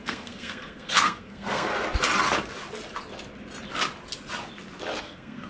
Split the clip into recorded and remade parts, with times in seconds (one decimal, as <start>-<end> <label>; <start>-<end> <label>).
0.0-1.7 remade; 1.7-5.0 recorded; 5.0-5.5 remade